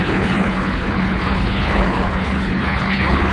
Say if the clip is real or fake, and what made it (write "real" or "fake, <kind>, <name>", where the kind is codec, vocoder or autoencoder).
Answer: fake, codec, HILCodec